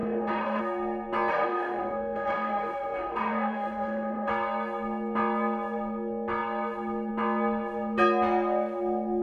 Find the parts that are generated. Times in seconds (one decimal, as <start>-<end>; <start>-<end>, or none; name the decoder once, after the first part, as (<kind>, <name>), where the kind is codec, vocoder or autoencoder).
0.0-0.6 (autoencoder, DAC-VAE); 1.3-4.3